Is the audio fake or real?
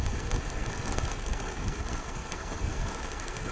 fake